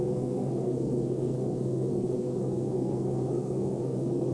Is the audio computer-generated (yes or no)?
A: yes